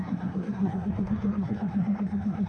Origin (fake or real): fake